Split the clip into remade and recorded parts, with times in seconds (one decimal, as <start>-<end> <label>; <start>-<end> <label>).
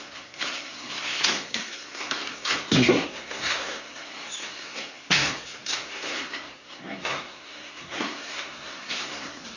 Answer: 0.0-9.6 remade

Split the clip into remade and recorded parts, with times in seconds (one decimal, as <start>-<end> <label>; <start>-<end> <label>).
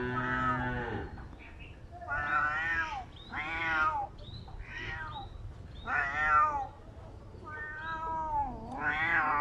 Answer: 0.0-4.0 recorded; 4.0-5.0 remade; 5.0-9.4 recorded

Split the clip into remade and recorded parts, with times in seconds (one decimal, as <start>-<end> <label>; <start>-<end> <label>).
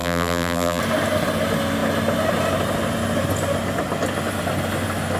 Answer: 0.0-0.8 remade; 0.8-5.2 recorded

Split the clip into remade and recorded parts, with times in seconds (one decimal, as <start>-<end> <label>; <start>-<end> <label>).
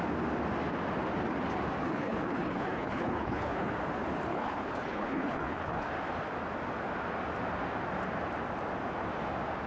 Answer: 0.0-1.8 recorded; 1.8-3.7 remade; 3.7-4.3 recorded; 4.3-5.9 remade; 5.9-9.7 recorded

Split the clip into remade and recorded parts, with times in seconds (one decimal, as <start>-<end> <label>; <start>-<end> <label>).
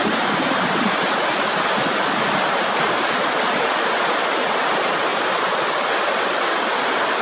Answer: 0.0-7.2 recorded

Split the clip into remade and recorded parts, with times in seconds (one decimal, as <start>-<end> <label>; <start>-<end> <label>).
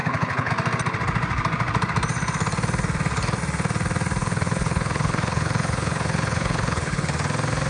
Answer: 0.0-0.5 remade; 0.5-4.2 recorded; 4.2-7.1 remade; 7.1-7.7 recorded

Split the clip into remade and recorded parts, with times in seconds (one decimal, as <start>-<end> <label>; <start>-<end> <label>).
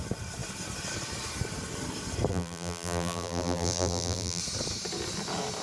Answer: 0.0-2.3 recorded; 2.3-4.4 remade; 4.4-5.6 recorded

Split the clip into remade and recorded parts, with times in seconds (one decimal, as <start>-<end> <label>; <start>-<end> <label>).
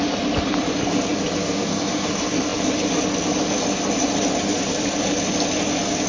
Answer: 0.0-1.4 recorded; 1.4-2.1 remade; 2.1-6.1 recorded